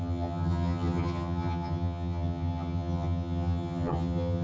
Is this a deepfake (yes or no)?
yes